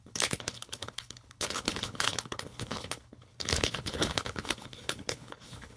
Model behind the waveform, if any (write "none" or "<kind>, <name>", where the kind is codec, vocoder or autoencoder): codec, HILCodec